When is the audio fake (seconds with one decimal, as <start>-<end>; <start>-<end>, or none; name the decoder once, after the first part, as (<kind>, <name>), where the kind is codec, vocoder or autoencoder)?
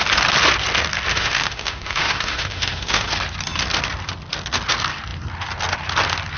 1.1-3.1 (autoencoder, DAC-VAE)